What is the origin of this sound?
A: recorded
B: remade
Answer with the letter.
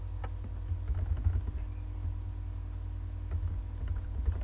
A